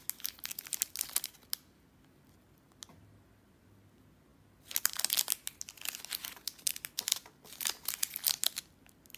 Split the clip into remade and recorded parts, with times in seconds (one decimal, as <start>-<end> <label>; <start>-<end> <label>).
0.0-9.2 recorded